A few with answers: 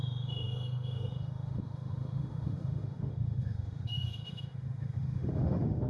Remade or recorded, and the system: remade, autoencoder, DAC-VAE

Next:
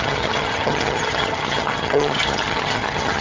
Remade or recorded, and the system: remade, vocoder, HiFi-GAN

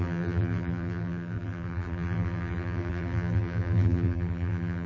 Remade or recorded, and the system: remade, vocoder, BigVGAN v2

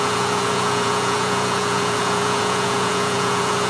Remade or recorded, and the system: remade, vocoder, Vocos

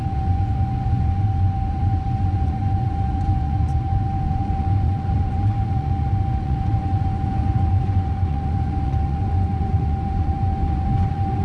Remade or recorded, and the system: remade, vocoder, Vocos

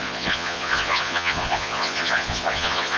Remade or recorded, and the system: remade, vocoder, Vocos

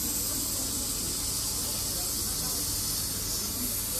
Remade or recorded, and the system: recorded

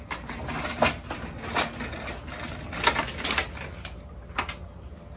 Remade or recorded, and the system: recorded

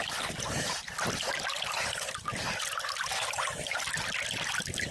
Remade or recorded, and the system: recorded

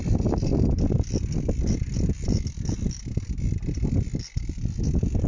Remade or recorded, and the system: recorded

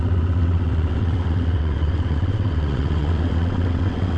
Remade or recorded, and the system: remade, vocoder, WaveNeXt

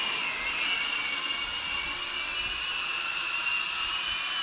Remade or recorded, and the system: recorded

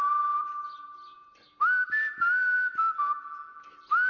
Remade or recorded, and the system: recorded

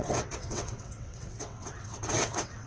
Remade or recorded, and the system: remade, vocoder, WaveNeXt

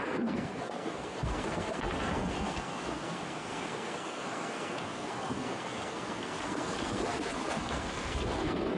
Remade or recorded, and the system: remade, codec, SNAC